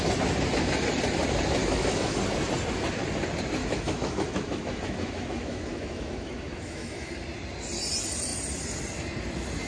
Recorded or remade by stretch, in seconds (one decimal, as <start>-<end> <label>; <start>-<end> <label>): 0.0-1.6 recorded; 1.6-2.2 remade; 2.2-3.6 recorded; 3.6-7.1 remade; 7.1-9.7 recorded